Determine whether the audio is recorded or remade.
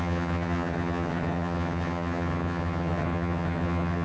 remade